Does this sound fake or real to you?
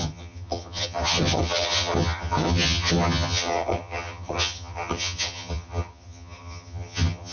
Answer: fake